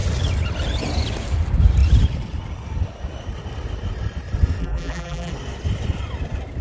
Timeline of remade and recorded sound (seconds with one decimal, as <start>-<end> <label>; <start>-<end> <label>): 0.0-4.6 recorded; 4.6-5.3 remade; 5.3-6.6 recorded

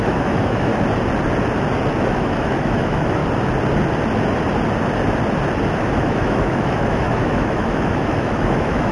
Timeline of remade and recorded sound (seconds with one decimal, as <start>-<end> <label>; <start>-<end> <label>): 0.0-0.7 remade; 0.7-2.1 recorded; 2.1-3.2 remade; 3.2-6.0 recorded; 6.0-8.9 remade